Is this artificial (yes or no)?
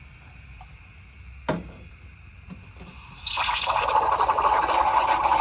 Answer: no